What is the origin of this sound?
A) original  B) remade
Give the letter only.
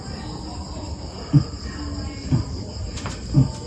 A